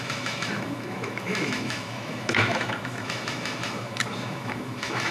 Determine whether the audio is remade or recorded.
remade